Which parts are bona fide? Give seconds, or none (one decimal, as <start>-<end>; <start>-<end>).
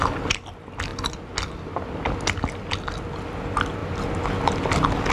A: 0.0-5.1